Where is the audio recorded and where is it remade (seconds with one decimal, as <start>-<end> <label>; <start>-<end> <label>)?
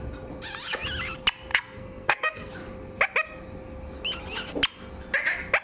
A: 0.0-1.5 recorded; 1.5-2.5 remade; 2.5-5.6 recorded